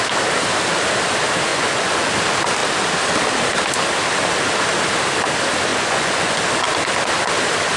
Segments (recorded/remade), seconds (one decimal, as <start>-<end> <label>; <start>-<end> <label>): 0.0-1.5 recorded; 1.5-2.1 remade; 2.1-5.7 recorded; 5.7-6.4 remade; 6.4-7.8 recorded